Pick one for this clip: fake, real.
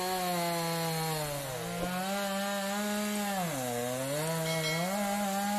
real